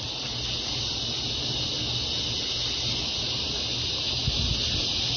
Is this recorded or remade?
recorded